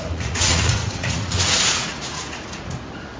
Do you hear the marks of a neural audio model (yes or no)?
yes